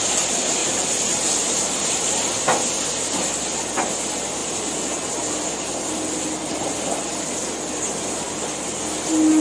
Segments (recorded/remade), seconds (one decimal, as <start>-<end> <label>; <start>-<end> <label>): 0.0-0.6 recorded; 0.6-2.0 remade; 2.0-9.4 recorded